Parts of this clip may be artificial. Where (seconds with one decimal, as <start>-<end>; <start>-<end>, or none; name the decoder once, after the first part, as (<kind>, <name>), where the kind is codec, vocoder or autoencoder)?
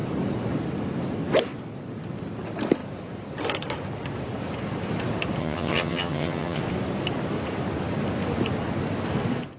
5.4-6.6 (vocoder, HiFi-GAN)